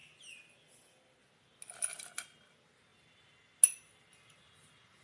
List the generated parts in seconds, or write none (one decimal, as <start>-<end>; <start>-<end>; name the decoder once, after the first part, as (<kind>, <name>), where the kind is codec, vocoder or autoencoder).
none